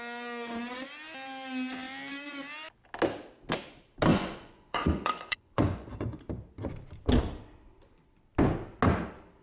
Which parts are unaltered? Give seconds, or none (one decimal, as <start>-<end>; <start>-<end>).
0.0-4.1; 6.2-9.4